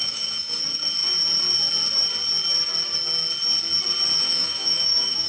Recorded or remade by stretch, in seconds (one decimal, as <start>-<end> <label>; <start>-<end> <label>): 0.0-0.6 remade; 0.6-4.3 recorded; 4.3-5.3 remade